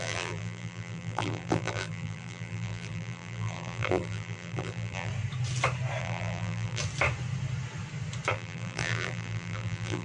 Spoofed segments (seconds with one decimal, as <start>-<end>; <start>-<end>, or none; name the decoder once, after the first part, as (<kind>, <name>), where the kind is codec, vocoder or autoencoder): 0.0-5.1 (vocoder, BigVGAN v2); 6.0-6.8; 8.3-10.0

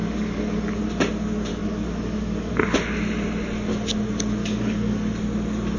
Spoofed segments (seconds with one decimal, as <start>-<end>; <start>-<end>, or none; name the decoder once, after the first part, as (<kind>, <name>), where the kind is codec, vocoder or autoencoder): 0.0-0.8 (codec, DAC); 1.5-2.5; 4.4-5.1

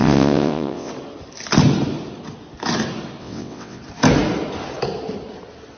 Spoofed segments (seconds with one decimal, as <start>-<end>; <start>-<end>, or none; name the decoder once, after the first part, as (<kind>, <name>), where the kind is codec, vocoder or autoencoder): 0.0-0.9 (vocoder, WaveNeXt); 3.2-3.8

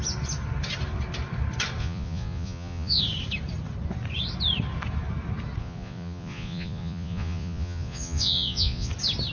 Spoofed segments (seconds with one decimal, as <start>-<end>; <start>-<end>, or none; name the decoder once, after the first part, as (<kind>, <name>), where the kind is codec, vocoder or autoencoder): 1.8-3.0 (vocoder, Vocos); 5.6-8.9

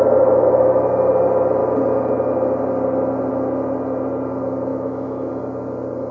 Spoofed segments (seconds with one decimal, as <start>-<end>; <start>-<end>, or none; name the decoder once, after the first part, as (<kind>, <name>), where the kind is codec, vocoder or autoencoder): 4.7-5.3 (autoencoder, DAC-VAE)

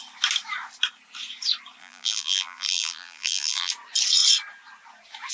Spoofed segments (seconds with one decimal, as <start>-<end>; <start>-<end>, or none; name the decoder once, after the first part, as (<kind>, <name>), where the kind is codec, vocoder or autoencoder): 1.8-3.7 (vocoder, BigVGAN v2)